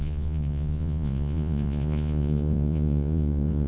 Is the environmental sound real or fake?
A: fake